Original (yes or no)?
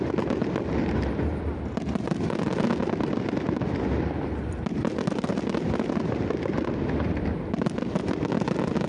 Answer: yes